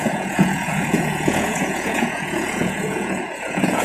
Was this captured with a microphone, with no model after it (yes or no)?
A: no